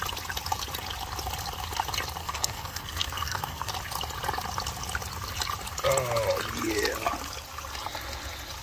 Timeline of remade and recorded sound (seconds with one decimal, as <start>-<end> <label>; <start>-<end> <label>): 0.0-2.2 recorded; 2.2-3.7 remade; 3.7-8.6 recorded